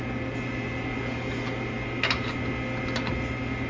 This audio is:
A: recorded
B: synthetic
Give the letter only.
A